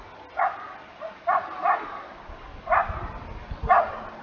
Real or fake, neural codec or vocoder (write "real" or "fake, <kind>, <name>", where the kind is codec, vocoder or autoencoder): real